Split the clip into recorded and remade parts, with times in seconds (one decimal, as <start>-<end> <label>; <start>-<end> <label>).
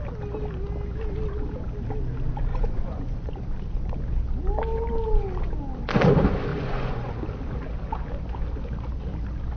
0.0-2.5 recorded; 2.5-3.3 remade; 3.3-6.5 recorded; 6.5-7.1 remade; 7.1-9.6 recorded